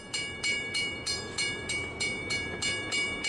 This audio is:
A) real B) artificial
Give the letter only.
B